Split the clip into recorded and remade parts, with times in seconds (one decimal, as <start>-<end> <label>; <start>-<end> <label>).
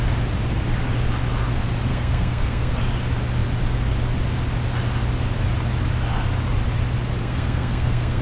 0.0-1.9 recorded; 1.9-2.7 remade; 2.7-7.2 recorded; 7.2-8.2 remade